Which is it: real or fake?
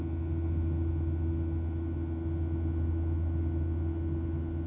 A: real